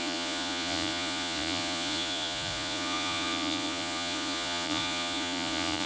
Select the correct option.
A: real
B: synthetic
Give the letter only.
B